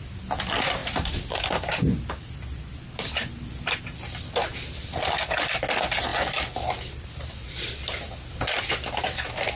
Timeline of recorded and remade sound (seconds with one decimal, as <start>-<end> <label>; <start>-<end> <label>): 0.0-9.6 recorded